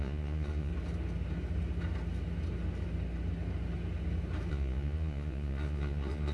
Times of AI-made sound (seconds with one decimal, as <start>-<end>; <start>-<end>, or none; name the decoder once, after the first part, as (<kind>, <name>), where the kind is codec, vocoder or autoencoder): 0.0-0.7 (vocoder, Vocos); 4.5-6.3